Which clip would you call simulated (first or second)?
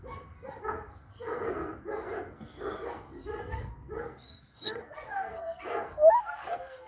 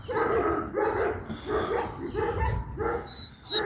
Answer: first